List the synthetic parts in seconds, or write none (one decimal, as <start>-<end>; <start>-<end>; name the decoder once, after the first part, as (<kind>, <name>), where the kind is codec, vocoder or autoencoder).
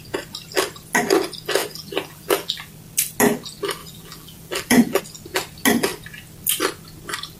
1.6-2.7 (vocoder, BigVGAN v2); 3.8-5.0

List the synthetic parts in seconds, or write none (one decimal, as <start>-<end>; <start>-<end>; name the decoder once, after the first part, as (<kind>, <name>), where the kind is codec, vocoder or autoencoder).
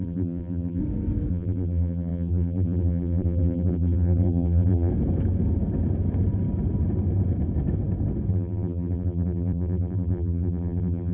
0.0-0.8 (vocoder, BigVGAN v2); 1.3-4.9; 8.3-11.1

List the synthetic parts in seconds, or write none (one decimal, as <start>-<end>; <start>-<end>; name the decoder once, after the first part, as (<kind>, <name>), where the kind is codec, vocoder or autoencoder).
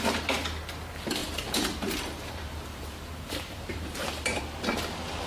1.2-4.4 (vocoder, BigVGAN v2)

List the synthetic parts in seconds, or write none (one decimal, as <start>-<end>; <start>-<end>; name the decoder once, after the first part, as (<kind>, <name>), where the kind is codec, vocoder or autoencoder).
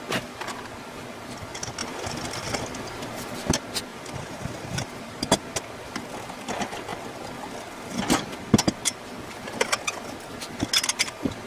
3.9-5.5 (vocoder, BigVGAN v2)